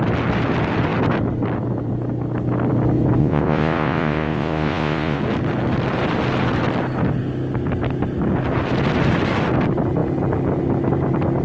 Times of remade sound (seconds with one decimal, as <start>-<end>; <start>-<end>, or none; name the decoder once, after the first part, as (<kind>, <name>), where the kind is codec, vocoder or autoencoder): 3.2-5.2 (vocoder, Vocos)